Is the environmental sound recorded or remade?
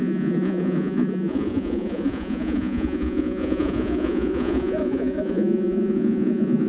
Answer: remade